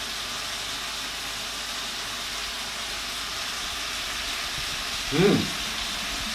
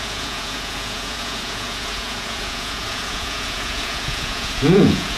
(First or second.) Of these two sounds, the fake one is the second